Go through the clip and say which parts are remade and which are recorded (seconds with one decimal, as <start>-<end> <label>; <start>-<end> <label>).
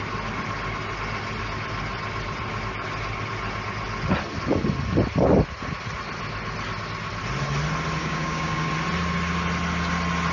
0.0-8.0 recorded; 8.0-8.7 remade; 8.7-10.3 recorded